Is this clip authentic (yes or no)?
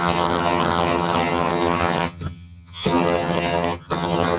no